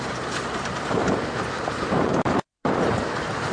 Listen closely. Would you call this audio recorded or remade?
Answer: remade